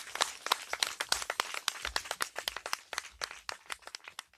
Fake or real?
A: real